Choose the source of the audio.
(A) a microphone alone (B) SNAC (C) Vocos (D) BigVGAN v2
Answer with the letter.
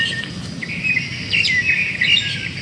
A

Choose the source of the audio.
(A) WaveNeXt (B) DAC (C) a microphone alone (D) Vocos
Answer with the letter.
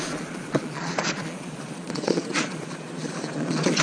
D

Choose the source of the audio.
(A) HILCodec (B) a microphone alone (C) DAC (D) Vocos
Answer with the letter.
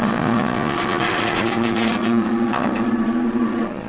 D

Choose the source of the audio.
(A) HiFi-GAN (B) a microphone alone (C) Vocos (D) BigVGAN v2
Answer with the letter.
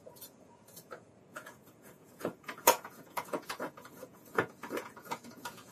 C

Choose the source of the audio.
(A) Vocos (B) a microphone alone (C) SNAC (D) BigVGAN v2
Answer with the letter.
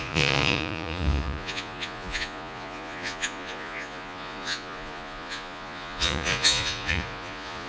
A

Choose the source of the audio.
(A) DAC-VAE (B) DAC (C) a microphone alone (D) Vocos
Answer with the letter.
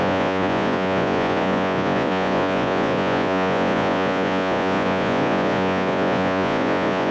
D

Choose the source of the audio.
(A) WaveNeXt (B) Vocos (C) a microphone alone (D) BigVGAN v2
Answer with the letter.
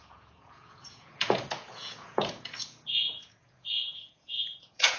B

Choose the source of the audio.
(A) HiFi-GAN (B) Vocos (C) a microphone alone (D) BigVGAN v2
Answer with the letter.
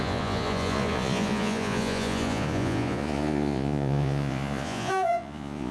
B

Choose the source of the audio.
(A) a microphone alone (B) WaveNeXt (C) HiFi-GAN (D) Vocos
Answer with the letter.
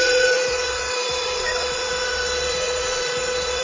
D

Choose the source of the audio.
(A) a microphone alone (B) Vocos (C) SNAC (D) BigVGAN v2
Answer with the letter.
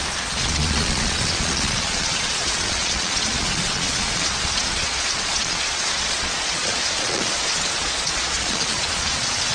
B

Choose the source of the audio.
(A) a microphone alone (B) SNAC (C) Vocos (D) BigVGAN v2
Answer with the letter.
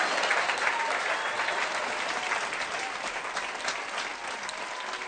A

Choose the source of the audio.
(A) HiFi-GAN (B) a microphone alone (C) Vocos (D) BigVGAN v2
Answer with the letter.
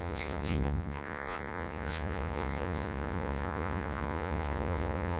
C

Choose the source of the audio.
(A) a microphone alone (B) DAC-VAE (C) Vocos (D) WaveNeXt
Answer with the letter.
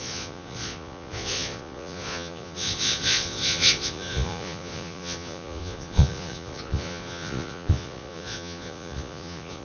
C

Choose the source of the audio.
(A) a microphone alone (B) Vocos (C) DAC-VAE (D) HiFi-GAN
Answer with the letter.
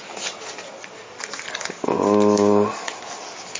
A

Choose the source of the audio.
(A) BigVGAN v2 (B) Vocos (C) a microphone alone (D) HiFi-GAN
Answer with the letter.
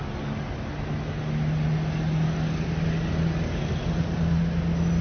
C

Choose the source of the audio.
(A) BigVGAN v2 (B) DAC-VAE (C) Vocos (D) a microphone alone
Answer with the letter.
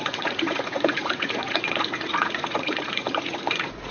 C